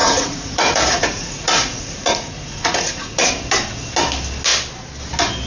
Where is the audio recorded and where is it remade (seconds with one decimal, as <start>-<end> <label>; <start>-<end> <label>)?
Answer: 0.0-3.3 remade; 3.3-5.5 recorded